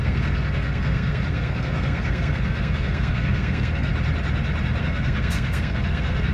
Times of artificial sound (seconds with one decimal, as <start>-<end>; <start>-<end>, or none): 0.0-3.9; 4.8-6.3

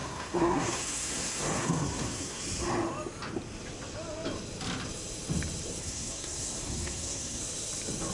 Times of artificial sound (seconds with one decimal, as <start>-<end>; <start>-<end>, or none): 0.0-2.4; 5.8-7.4

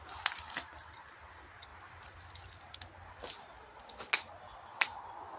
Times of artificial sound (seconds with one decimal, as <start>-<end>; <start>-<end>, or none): none

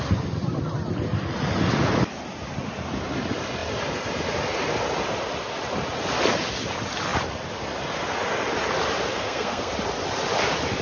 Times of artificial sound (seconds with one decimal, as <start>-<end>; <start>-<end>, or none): 9.1-9.7

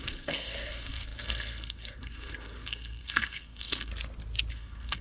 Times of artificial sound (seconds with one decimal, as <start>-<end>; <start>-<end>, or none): 0.0-3.9; 4.5-5.0